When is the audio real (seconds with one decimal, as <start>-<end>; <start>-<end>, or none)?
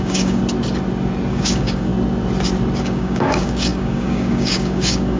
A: 0.4-1.3; 1.9-2.8